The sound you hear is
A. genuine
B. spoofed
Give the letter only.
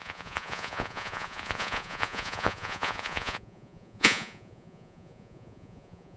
B